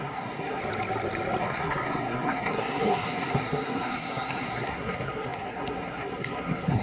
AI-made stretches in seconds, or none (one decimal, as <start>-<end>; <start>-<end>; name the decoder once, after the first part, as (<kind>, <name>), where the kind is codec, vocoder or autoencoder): 0.0-0.6 (codec, SNAC); 1.4-6.8

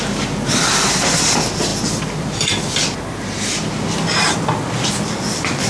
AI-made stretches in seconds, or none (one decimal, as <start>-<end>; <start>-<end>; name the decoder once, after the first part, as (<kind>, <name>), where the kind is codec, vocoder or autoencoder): none

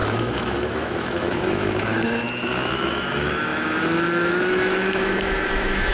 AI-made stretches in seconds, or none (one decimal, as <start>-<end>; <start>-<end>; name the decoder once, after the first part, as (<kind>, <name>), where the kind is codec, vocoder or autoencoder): 0.0-5.9 (autoencoder, DAC-VAE)

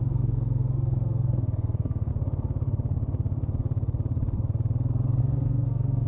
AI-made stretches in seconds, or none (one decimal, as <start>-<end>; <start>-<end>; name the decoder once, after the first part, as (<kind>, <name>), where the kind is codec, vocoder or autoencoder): 0.0-2.1 (codec, SNAC); 5.2-6.1

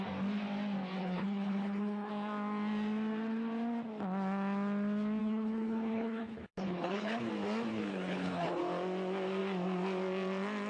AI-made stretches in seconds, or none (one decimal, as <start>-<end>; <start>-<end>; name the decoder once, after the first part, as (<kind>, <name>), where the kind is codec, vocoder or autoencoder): 1.0-2.1 (codec, HILCodec); 5.2-7.3; 7.7-8.6